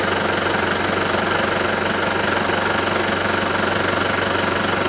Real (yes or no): yes